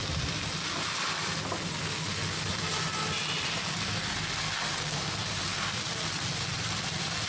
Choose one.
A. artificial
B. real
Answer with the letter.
B